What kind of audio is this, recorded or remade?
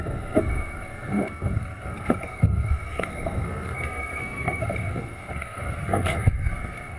remade